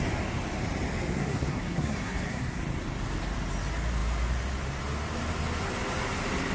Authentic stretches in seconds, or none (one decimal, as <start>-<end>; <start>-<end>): 0.0-1.2; 2.6-6.5